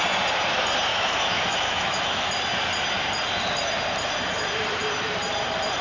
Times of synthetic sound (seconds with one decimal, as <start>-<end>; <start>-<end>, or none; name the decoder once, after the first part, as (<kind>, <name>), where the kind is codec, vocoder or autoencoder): 0.9-2.3 (autoencoder, DAC-VAE)